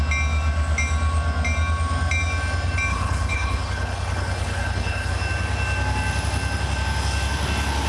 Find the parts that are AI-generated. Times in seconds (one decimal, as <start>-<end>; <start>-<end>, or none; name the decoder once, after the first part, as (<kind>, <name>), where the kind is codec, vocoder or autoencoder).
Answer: 2.9-5.1 (codec, HILCodec)